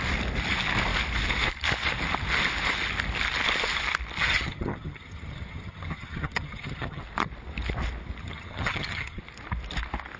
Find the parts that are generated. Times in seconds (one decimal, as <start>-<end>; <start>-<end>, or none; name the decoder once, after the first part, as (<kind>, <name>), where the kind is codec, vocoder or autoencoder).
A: 4.2-7.0 (vocoder, HiFi-GAN); 8.2-9.2